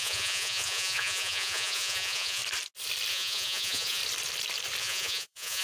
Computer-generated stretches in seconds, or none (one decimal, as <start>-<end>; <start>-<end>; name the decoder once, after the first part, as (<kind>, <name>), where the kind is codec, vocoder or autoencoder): 0.0-2.4 (vocoder, Vocos); 3.1-4.0; 4.8-5.6